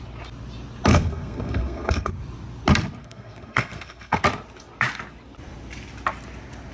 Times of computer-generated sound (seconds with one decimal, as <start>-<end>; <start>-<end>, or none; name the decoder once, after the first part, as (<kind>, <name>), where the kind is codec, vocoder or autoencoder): 0.9-2.1 (codec, SNAC); 3.0-4.2

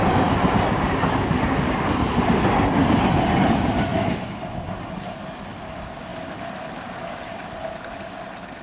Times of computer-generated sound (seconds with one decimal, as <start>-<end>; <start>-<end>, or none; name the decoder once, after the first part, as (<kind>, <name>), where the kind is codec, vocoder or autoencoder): 3.9-4.4 (autoencoder, DAC-VAE)

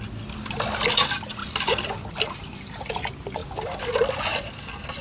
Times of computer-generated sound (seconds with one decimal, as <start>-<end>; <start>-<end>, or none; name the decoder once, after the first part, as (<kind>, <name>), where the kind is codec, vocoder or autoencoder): none

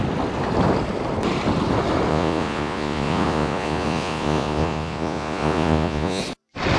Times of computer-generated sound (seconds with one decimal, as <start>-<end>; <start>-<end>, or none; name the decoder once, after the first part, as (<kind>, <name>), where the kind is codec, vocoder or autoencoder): 2.1-6.2 (vocoder, Vocos)

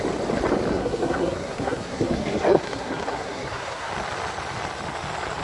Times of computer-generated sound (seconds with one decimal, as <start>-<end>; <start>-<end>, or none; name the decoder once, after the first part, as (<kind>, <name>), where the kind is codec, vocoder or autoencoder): 0.7-3.9 (codec, SNAC)

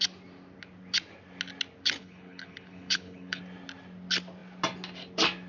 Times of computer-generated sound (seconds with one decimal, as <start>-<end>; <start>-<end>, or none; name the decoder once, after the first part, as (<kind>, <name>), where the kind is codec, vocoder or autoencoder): 2.0-3.4 (codec, HILCodec)

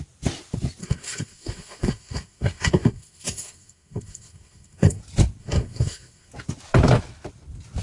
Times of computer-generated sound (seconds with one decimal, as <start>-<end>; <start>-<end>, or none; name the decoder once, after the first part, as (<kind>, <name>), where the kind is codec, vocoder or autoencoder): 0.8-5.0 (codec, SNAC); 5.4-6.3